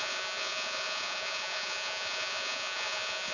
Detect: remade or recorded remade